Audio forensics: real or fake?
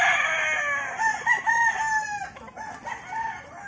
real